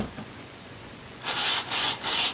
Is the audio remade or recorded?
remade